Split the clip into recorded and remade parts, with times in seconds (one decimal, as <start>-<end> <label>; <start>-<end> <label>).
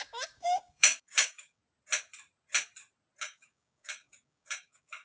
0.0-1.6 remade; 1.6-3.2 recorded; 3.2-5.0 remade